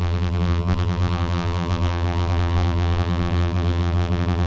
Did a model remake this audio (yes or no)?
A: yes